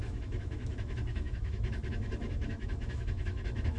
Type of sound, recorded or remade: remade